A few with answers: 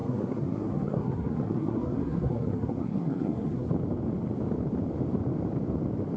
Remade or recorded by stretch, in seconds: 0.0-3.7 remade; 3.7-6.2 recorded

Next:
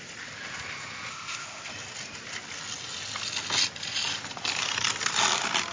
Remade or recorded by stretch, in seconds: 0.0-1.1 recorded; 1.1-1.7 remade; 1.7-5.7 recorded

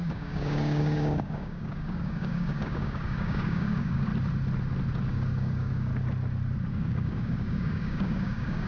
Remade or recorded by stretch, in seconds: 0.0-4.1 remade; 4.1-5.1 recorded; 5.1-5.9 remade; 5.9-6.7 recorded; 6.7-8.7 remade

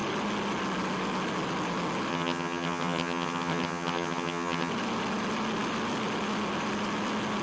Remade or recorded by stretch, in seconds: 0.0-2.1 recorded; 2.1-4.7 remade; 4.7-7.4 recorded

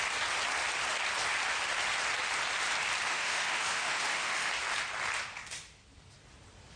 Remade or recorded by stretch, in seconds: 0.0-3.1 recorded; 3.1-4.5 remade; 4.5-6.8 recorded

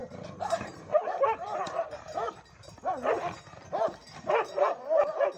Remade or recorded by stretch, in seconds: 0.0-3.2 remade; 3.2-5.4 recorded